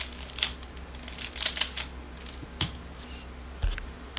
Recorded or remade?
recorded